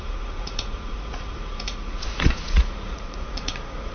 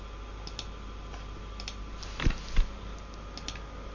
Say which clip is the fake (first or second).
first